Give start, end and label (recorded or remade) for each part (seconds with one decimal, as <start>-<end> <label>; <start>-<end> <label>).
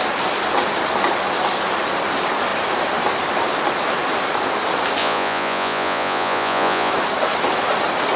0.0-5.0 recorded; 5.0-6.9 remade; 6.9-8.2 recorded